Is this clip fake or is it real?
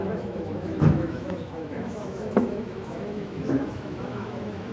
fake